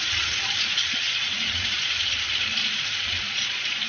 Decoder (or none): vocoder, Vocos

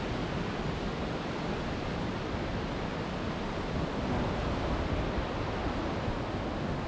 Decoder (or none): none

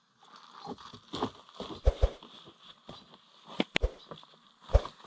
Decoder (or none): none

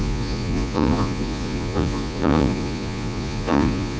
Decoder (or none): vocoder, Vocos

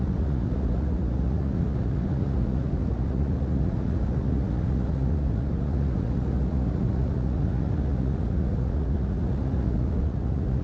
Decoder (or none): vocoder, Vocos